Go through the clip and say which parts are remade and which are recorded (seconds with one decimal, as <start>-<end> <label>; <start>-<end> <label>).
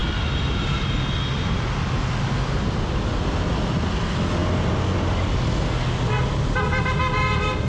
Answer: 0.0-7.7 recorded